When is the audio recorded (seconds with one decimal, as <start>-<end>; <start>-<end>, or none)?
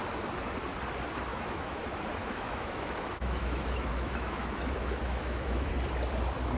0.0-1.3; 1.8-2.2; 5.7-6.6